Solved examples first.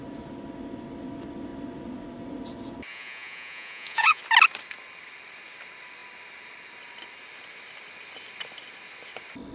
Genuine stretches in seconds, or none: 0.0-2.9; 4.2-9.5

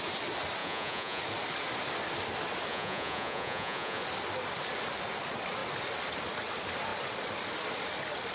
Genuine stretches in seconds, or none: 0.0-0.6; 1.2-2.7; 4.0-8.3

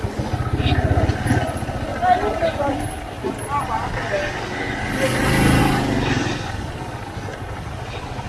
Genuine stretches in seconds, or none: 0.0-8.3

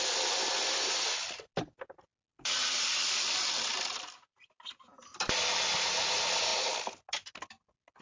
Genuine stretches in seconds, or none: 0.0-8.0

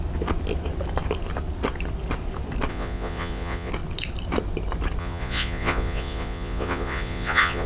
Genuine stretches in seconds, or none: 0.0-2.7; 3.7-5.0

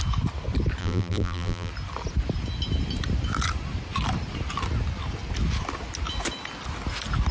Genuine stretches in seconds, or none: 0.0-0.8; 1.7-7.3